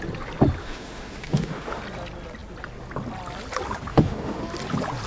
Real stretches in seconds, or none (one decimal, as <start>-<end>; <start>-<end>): 0.0-0.6; 1.8-3.9; 4.4-5.1